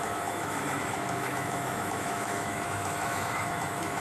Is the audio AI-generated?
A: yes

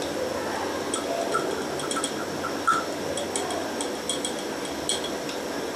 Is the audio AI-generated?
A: no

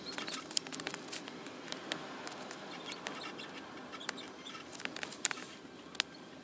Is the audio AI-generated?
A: no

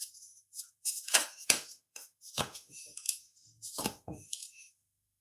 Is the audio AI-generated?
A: yes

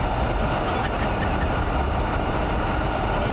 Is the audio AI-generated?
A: no